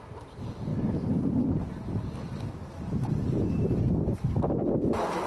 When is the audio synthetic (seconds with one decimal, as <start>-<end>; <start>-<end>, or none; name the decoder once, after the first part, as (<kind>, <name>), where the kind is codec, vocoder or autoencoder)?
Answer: none

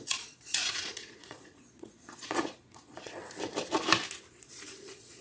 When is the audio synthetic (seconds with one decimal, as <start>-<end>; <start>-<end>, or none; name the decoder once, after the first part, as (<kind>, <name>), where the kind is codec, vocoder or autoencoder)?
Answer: 0.0-3.2 (vocoder, Vocos); 4.3-5.2

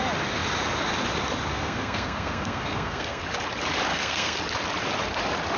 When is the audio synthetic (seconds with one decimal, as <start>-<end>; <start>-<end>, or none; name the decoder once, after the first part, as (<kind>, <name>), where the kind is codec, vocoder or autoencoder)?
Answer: 1.5-3.2 (codec, SNAC); 3.9-4.4

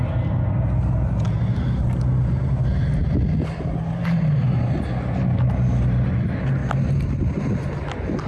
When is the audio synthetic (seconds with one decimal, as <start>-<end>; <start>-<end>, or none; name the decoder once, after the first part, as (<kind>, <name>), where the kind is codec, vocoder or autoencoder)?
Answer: none

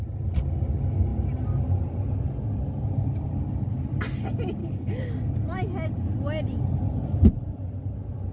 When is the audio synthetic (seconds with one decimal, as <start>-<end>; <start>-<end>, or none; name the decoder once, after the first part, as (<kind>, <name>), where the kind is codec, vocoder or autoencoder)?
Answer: 4.6-5.1 (codec, HILCodec)

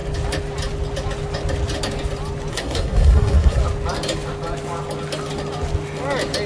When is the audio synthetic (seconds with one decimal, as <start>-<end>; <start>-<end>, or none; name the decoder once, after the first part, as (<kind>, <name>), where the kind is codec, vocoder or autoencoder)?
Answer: 2.5-3.6 (codec, SNAC)

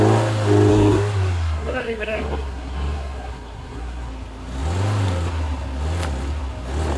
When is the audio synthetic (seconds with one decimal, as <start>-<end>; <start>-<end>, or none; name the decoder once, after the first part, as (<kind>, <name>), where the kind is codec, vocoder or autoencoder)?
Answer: 0.7-4.1 (codec, SNAC)